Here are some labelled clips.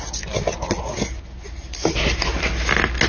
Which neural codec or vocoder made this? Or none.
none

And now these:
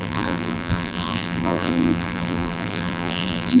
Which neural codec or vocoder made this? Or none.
vocoder, BigVGAN v2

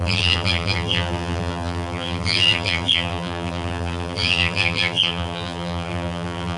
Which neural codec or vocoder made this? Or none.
vocoder, BigVGAN v2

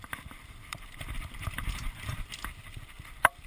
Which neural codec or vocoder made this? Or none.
vocoder, BigVGAN v2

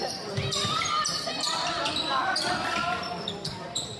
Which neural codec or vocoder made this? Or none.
vocoder, BigVGAN v2